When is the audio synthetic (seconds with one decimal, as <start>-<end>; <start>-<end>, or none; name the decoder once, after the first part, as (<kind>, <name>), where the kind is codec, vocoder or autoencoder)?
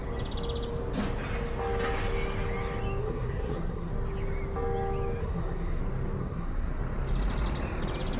3.0-3.9 (codec, SNAC); 5.2-5.8; 6.2-6.8